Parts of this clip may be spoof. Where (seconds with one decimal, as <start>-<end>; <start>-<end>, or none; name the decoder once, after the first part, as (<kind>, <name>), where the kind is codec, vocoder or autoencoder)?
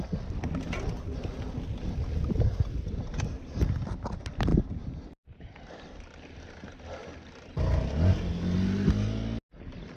none